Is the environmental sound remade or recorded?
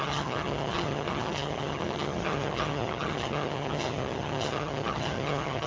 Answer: remade